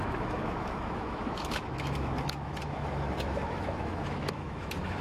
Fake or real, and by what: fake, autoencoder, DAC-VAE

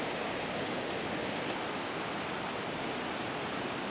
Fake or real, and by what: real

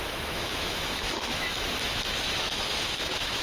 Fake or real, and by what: fake, autoencoder, DAC-VAE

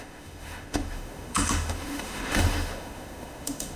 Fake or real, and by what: fake, autoencoder, DAC-VAE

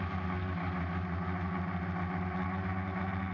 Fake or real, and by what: real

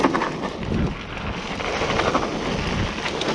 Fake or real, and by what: real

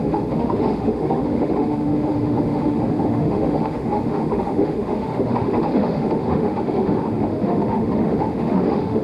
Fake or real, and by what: fake, autoencoder, DAC-VAE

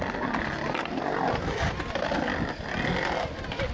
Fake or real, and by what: real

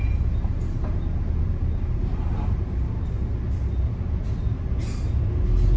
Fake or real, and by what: real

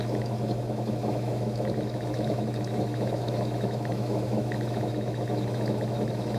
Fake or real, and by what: fake, autoencoder, DAC-VAE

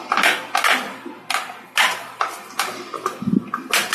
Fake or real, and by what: real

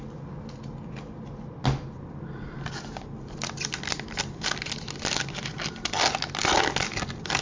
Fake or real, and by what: real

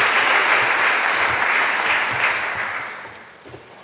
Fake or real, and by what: real